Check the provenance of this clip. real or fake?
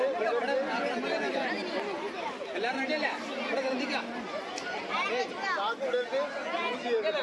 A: real